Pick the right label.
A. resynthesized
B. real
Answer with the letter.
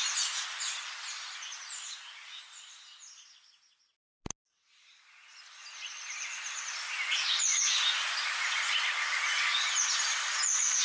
B